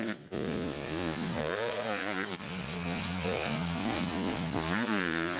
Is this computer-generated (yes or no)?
yes